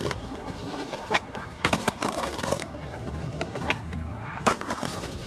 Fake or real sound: fake